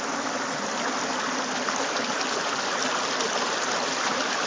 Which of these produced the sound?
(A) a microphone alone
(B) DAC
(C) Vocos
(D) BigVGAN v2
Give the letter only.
A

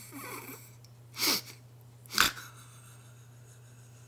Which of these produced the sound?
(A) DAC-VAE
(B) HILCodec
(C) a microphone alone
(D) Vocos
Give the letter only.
C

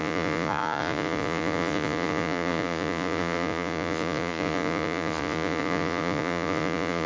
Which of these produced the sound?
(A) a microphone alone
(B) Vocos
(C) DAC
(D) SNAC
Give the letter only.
B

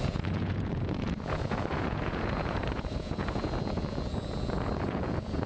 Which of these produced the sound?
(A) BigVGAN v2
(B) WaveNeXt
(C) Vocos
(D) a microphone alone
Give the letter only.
C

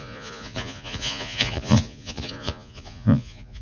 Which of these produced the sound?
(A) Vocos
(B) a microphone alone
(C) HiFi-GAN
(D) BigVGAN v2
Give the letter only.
A